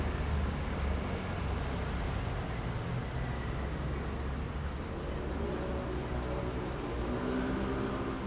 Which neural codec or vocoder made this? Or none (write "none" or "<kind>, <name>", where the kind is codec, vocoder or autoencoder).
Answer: none